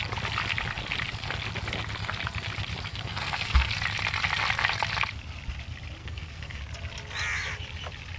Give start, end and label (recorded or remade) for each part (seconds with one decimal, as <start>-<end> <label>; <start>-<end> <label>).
0.0-2.9 recorded; 2.9-3.7 remade; 3.7-6.0 recorded; 6.0-6.6 remade; 6.6-8.2 recorded